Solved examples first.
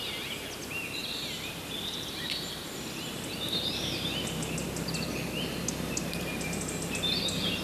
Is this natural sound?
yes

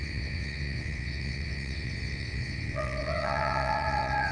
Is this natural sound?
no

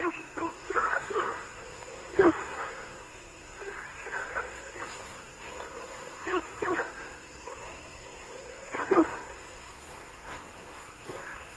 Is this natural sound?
no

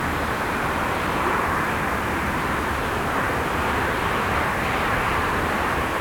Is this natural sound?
no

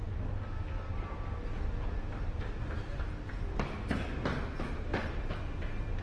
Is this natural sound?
yes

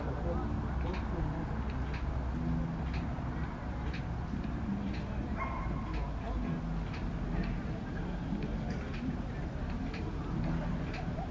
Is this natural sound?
yes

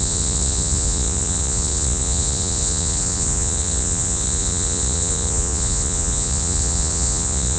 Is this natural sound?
no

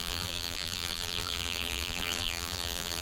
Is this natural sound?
no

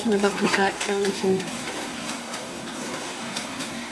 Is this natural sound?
no